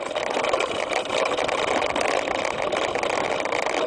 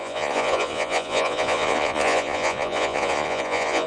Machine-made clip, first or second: second